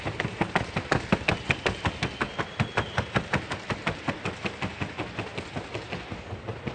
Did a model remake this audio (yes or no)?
no